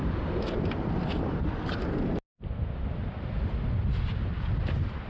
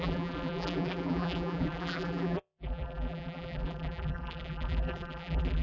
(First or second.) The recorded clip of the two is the first